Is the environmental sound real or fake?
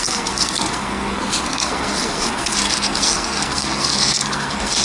fake